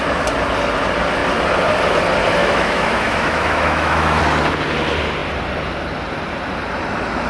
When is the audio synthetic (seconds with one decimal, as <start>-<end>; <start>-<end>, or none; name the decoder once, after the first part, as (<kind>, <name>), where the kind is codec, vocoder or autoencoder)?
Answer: 2.4-4.2 (autoencoder, DAC-VAE)